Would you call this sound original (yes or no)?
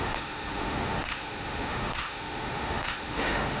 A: no